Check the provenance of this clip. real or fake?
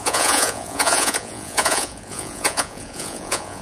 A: fake